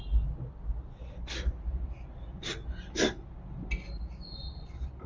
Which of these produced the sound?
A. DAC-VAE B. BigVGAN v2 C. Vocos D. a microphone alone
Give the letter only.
D